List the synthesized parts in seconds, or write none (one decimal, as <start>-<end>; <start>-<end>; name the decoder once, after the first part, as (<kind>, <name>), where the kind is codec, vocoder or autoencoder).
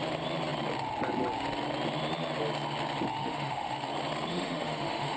3.2-3.7 (autoencoder, DAC-VAE); 4.3-5.2